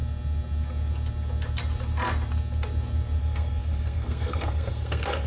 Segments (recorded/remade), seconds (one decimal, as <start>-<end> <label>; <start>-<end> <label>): 0.0-3.2 recorded; 3.2-5.3 remade